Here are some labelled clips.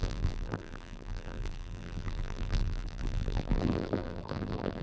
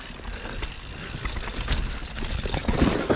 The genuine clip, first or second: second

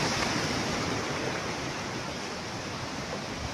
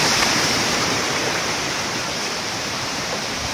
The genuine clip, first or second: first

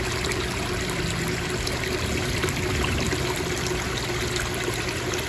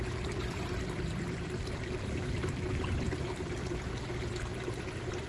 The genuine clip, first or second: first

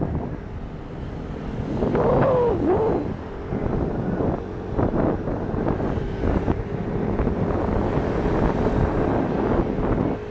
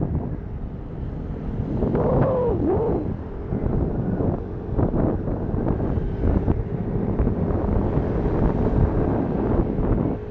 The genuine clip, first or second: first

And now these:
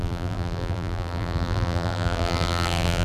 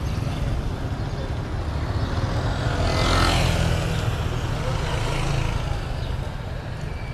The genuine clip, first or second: second